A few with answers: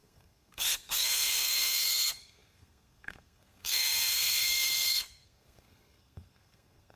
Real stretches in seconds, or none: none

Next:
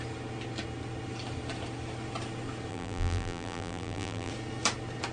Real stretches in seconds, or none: 0.0-2.7; 4.3-5.1

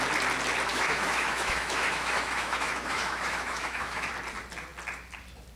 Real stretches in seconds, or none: 0.0-0.7; 4.1-5.6